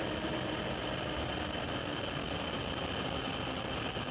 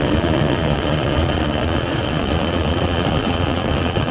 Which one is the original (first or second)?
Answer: first